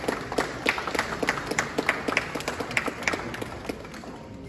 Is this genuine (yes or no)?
yes